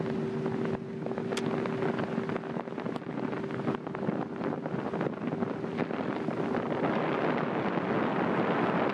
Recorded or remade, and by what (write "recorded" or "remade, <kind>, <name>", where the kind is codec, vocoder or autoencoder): recorded